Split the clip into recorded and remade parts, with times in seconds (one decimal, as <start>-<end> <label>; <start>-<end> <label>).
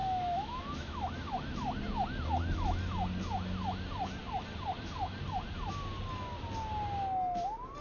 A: 0.0-1.3 remade; 1.3-7.8 recorded